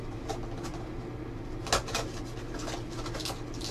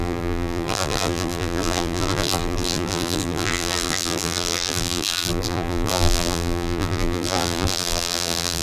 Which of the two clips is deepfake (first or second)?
second